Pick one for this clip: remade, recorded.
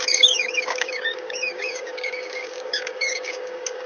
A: remade